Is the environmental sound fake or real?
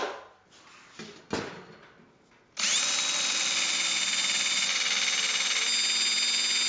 real